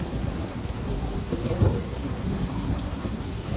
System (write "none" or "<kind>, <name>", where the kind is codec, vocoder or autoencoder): codec, SNAC